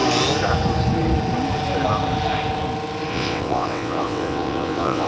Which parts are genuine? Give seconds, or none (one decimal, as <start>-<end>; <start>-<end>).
0.0-3.1